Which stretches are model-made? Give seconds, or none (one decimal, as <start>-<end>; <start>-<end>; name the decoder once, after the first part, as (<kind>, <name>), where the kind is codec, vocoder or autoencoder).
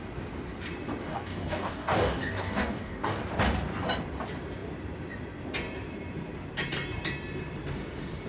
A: 1.0-3.2 (codec, DAC)